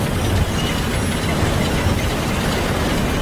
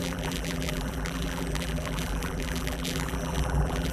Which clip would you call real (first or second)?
first